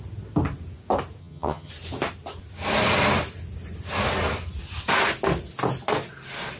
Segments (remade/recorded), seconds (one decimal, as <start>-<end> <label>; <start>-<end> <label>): 0.0-1.2 recorded; 1.2-1.7 remade; 1.7-6.6 recorded